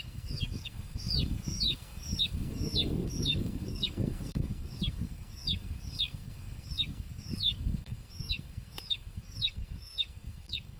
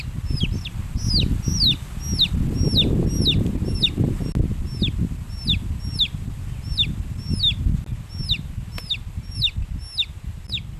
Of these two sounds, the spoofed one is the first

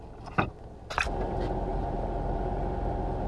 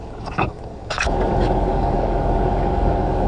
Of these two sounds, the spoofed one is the second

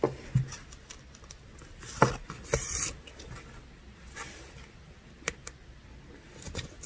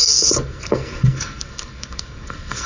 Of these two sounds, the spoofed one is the second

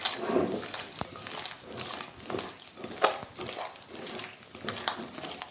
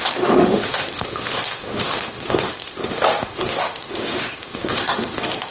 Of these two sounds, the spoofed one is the second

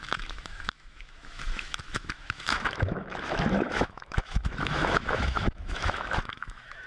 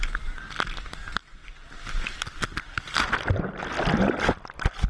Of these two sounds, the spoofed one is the first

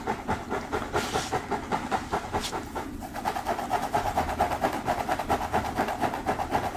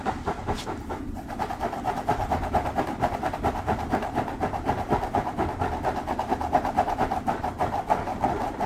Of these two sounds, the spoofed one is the second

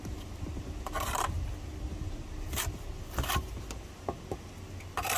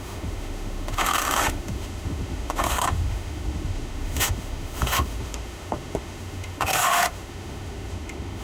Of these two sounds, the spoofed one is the second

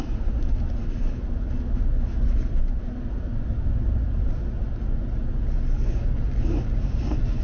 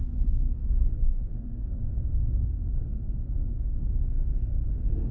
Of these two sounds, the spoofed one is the second